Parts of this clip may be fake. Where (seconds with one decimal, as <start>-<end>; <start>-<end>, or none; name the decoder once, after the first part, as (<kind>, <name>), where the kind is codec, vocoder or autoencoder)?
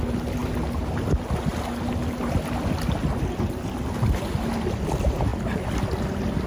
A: none